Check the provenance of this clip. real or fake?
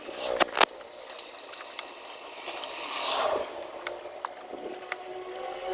real